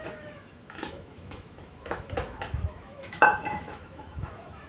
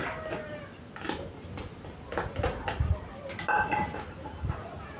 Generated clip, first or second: first